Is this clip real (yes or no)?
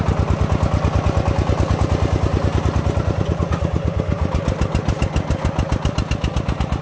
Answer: yes